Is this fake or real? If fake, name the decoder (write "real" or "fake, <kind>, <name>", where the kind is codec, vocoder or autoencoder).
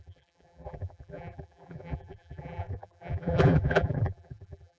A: fake, vocoder, BigVGAN v2